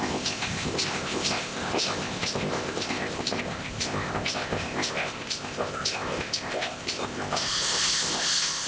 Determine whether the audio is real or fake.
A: fake